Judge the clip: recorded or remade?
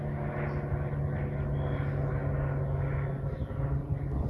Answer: recorded